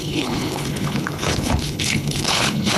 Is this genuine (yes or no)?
no